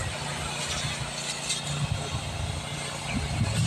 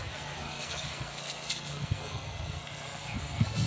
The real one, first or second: first